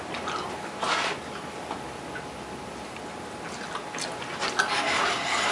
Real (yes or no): yes